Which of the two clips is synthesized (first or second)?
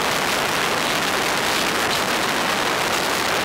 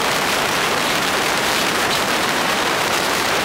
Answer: second